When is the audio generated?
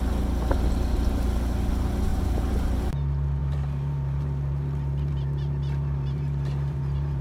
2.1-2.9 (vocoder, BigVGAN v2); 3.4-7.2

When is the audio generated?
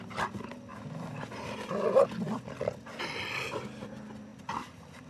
none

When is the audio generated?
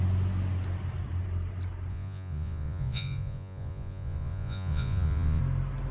1.9-5.4 (vocoder, Vocos)